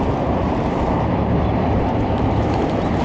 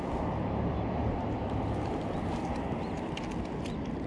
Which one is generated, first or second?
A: first